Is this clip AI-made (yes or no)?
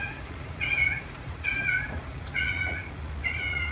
yes